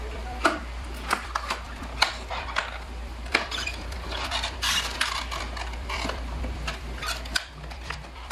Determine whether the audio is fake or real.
fake